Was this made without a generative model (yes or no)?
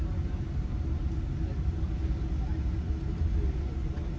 yes